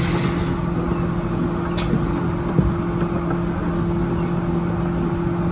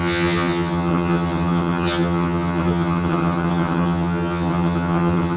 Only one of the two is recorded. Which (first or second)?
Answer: first